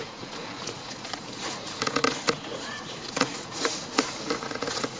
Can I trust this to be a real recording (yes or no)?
no